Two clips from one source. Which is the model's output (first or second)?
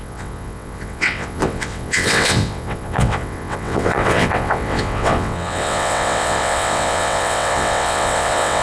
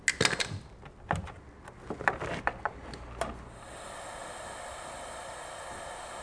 first